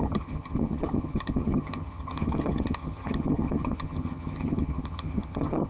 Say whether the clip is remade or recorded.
remade